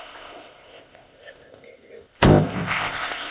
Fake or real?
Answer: fake